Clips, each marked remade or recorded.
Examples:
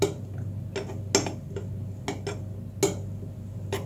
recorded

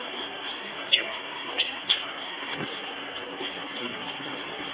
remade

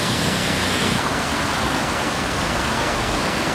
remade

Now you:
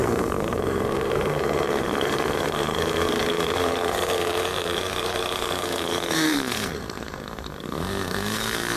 remade